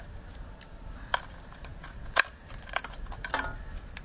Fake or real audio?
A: real